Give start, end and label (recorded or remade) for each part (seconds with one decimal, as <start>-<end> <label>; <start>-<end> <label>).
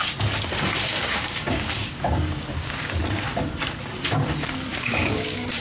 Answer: 0.0-0.9 recorded; 0.9-3.0 remade; 3.0-4.7 recorded; 4.7-5.6 remade